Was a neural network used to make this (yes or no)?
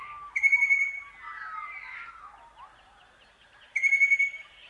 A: no